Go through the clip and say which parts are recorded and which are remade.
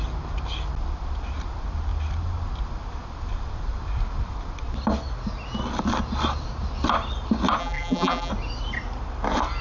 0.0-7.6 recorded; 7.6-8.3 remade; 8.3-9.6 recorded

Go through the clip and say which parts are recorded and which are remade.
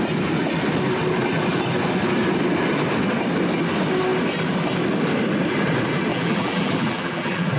0.0-6.1 recorded; 6.1-7.6 remade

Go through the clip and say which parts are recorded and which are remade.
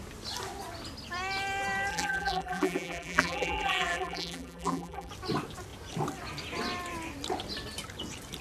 0.0-1.9 recorded; 1.9-5.1 remade; 5.1-8.4 recorded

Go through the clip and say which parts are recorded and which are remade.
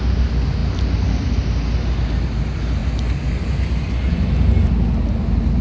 0.0-5.6 recorded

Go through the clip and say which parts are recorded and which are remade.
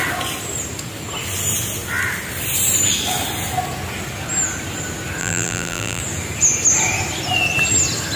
0.0-5.2 recorded; 5.2-6.0 remade; 6.0-8.2 recorded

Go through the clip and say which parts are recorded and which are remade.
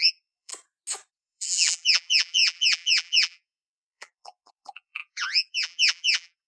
0.0-0.5 remade; 0.5-1.1 recorded; 1.1-6.5 remade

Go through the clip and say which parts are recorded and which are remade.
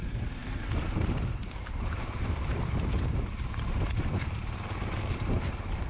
0.0-0.4 recorded; 0.4-3.9 remade; 3.9-5.9 recorded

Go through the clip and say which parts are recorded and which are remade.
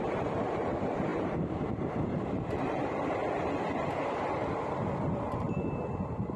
0.0-3.2 remade; 3.2-3.7 recorded; 3.7-6.4 remade